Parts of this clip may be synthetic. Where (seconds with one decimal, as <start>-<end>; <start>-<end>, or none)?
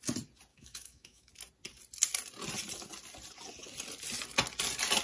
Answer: 0.5-1.3